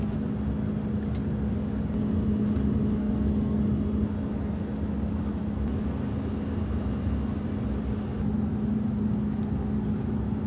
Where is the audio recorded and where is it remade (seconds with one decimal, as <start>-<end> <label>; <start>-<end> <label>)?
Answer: 0.0-3.0 recorded; 3.0-3.6 remade; 3.6-10.5 recorded